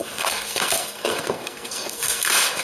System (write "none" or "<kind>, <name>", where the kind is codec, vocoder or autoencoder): codec, SNAC